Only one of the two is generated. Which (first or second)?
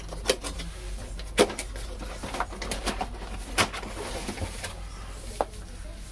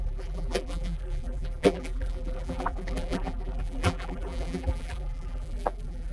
second